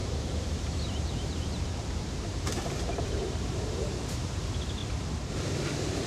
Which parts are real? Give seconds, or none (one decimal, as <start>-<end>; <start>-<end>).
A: 4.8-6.1

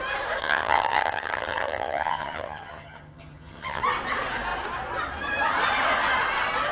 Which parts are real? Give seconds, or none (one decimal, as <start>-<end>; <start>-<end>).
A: 0.0-0.4; 3.8-6.7

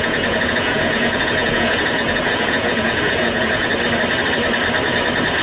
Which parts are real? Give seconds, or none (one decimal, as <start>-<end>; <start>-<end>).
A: 3.7-5.4

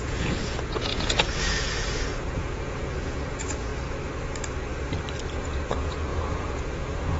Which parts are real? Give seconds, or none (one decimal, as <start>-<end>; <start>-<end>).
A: 3.7-5.4

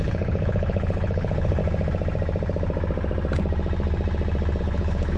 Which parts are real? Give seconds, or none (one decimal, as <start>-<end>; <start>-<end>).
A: 1.6-4.6

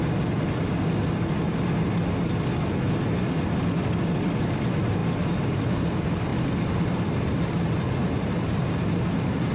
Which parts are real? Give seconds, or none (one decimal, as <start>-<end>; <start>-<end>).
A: 0.0-5.0; 5.6-8.0

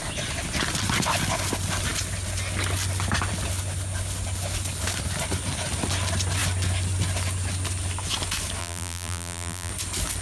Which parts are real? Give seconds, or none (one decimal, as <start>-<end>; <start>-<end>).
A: 0.0-8.6; 9.7-10.2